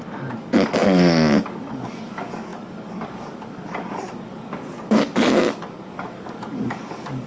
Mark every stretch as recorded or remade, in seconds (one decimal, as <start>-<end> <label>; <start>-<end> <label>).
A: 0.0-7.3 remade